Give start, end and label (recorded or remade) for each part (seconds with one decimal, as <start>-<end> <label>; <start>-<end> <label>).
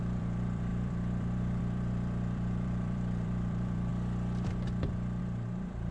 0.0-3.9 remade; 3.9-5.2 recorded; 5.2-5.9 remade